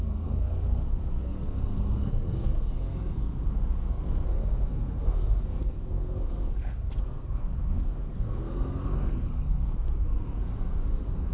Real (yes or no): no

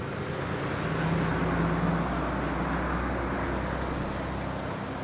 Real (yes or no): yes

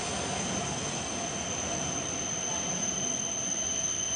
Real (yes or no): yes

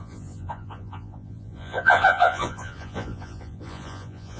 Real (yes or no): no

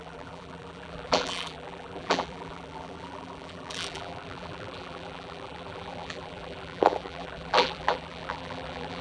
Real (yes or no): no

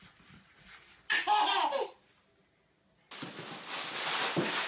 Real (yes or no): yes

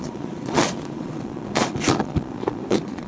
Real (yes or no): no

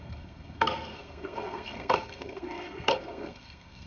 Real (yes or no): no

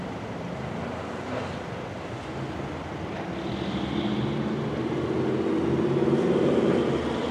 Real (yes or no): yes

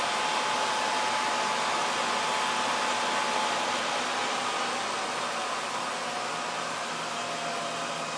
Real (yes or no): yes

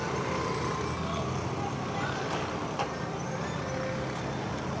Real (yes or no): yes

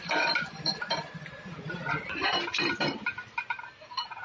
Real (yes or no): yes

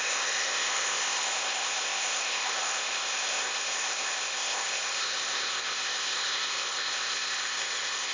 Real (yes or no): no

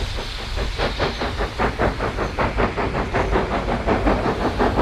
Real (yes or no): yes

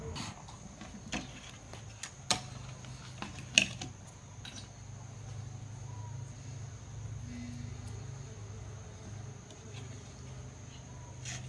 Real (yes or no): yes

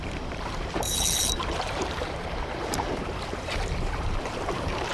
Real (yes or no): no